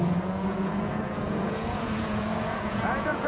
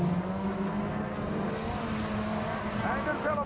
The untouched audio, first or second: second